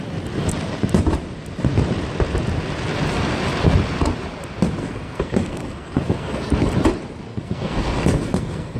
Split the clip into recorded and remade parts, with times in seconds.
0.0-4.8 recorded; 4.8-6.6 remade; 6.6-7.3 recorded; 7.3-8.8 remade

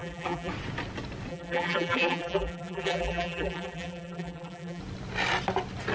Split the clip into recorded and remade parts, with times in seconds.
0.0-0.5 remade; 0.5-1.3 recorded; 1.3-4.8 remade; 4.8-5.9 recorded